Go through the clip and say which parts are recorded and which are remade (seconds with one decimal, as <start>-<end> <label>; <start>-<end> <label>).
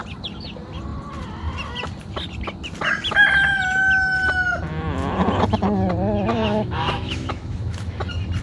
0.0-6.3 recorded; 6.3-8.0 remade; 8.0-8.4 recorded